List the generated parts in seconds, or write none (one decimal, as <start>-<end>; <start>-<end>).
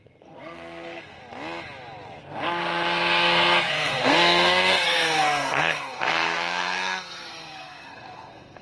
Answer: 0.0-1.2; 2.2-8.6